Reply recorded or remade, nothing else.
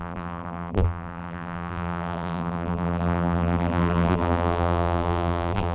remade